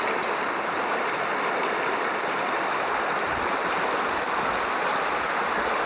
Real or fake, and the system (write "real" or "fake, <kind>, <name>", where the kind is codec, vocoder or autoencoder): real